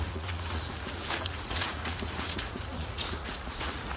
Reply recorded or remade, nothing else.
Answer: remade